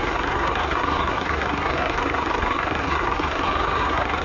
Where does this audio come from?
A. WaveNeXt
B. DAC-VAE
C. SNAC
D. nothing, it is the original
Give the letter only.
C